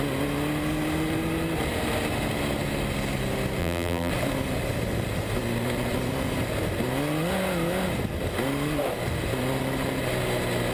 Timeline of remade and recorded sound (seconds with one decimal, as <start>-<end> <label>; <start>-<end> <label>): 0.0-3.6 recorded; 3.6-4.1 remade; 4.1-10.7 recorded